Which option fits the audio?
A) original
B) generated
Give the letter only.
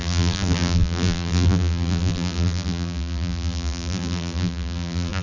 B